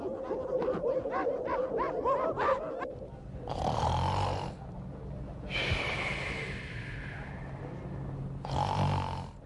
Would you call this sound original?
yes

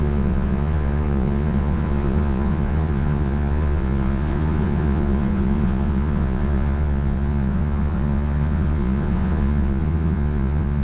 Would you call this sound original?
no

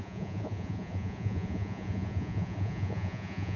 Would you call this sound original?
no